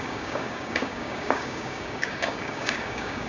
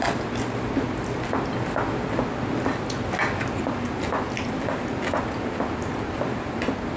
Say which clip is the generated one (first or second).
first